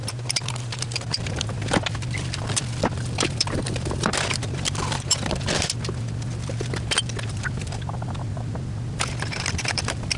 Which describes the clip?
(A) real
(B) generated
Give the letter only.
B